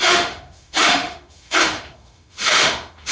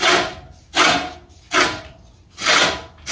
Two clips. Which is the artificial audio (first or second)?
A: first